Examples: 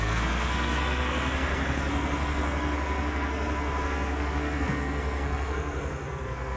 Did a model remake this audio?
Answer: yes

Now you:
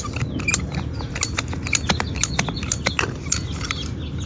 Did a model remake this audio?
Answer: no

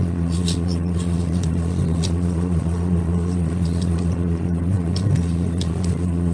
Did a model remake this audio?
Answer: yes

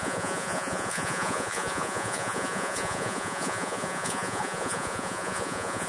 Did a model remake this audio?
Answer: yes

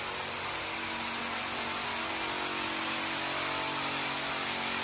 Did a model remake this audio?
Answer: no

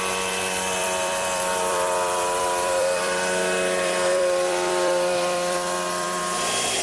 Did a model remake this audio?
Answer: yes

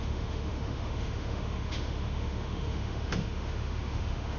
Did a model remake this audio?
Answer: yes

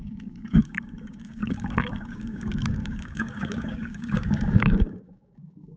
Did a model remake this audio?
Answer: yes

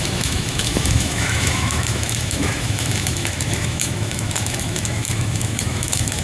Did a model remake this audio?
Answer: yes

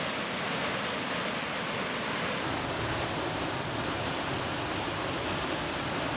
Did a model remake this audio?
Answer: no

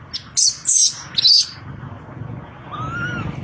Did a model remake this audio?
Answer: no